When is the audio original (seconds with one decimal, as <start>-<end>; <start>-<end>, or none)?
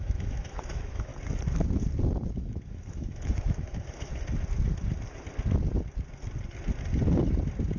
1.1-2.3; 4.1-7.8